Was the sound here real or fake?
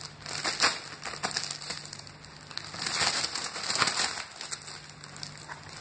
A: real